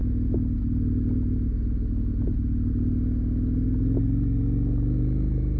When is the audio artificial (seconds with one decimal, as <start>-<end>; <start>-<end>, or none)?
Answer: none